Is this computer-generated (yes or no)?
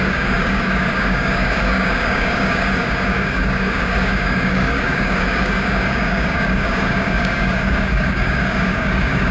yes